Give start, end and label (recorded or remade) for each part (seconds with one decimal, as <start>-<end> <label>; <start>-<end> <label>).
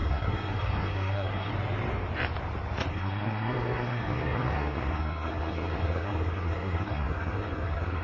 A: 0.0-1.5 remade; 1.5-2.9 recorded; 2.9-8.0 remade